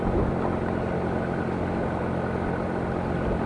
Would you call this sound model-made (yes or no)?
no